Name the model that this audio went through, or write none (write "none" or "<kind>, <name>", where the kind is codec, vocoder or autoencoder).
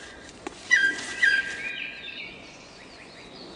vocoder, Vocos